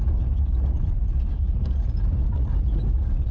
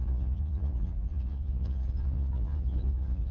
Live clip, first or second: first